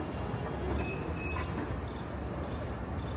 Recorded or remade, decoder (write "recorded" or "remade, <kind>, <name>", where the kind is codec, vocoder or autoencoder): recorded